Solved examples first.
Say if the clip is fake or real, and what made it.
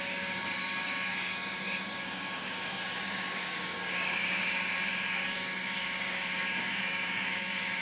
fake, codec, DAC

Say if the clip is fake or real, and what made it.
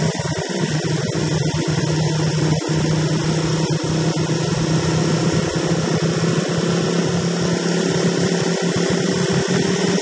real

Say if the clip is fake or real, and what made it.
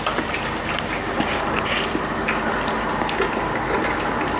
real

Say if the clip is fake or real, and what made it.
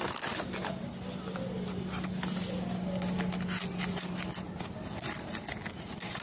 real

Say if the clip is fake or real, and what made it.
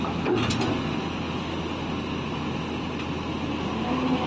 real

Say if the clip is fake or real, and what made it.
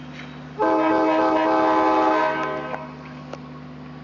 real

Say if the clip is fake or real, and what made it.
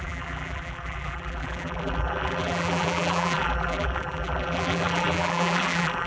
fake, vocoder, BigVGAN v2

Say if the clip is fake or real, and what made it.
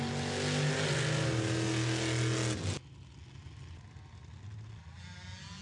real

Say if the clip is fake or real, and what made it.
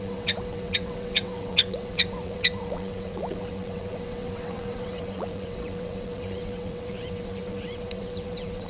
fake, vocoder, WaveNeXt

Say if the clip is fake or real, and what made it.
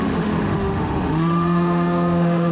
fake, autoencoder, DAC-VAE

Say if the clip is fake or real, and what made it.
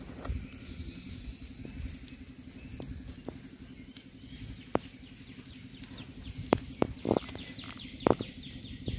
real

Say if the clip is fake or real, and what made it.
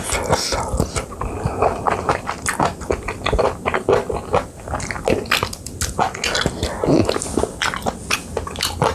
real